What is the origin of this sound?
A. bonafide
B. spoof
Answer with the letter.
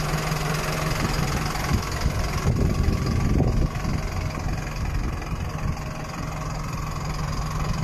A